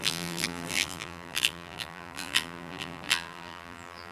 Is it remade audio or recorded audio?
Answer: remade